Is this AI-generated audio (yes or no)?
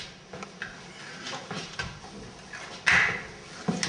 no